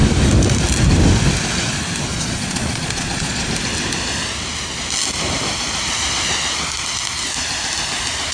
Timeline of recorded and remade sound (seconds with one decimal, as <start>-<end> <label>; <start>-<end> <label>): 0.0-2.1 recorded; 2.1-3.5 remade; 3.5-8.3 recorded